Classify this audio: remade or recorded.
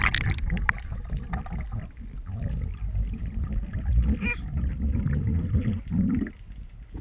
recorded